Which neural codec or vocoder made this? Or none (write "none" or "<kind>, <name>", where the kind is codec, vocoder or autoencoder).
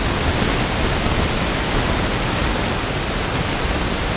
none